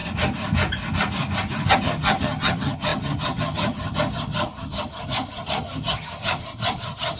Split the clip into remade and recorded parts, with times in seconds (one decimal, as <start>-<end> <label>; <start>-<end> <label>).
0.0-1.7 recorded; 1.7-7.2 remade

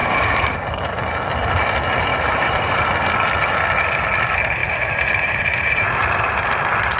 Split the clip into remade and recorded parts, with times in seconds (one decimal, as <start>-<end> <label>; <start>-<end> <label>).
0.0-1.1 remade; 1.1-2.1 recorded; 2.1-2.7 remade; 2.7-4.6 recorded; 4.6-5.9 remade; 5.9-7.0 recorded

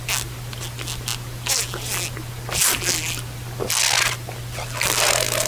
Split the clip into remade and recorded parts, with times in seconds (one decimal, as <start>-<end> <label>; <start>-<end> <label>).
0.0-5.5 recorded